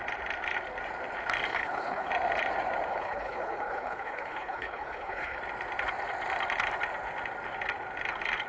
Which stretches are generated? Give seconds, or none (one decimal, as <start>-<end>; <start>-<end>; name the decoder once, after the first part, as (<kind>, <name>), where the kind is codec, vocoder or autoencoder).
1.5-2.1 (codec, HILCodec); 2.9-5.4